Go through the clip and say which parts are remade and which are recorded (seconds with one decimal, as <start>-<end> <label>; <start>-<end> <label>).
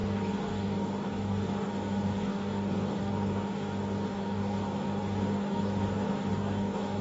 0.0-7.0 remade